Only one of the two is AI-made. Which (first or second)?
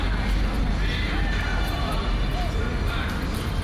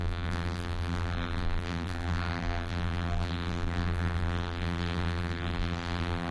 second